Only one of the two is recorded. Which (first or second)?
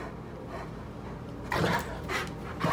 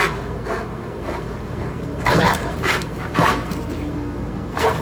first